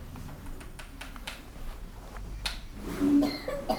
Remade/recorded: recorded